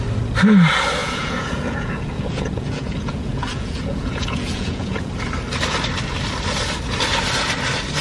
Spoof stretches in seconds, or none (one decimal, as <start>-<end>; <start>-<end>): 1.0-5.1

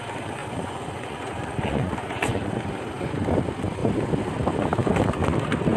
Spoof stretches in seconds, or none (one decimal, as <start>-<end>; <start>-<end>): 0.4-2.5